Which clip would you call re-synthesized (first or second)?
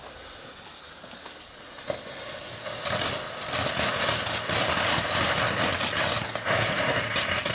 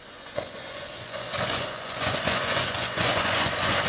second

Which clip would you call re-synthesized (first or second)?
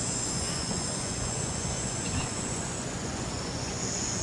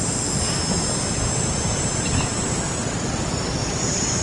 first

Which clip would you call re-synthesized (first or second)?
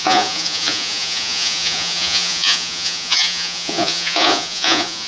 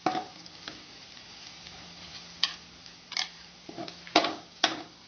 first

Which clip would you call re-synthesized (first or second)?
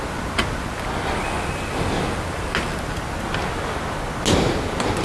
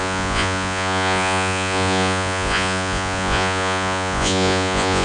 second